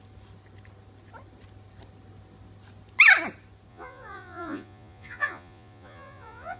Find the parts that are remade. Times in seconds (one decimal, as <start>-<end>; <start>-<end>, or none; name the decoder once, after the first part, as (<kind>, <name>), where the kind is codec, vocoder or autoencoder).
3.7-6.6 (vocoder, Vocos)